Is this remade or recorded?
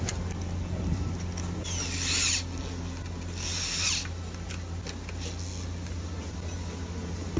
recorded